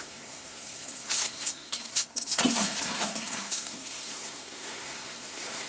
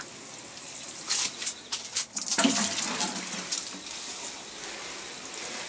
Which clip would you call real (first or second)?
second